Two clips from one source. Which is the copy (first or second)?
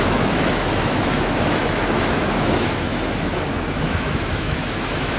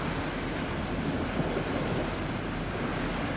first